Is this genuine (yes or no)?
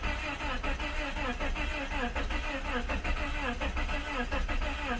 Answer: yes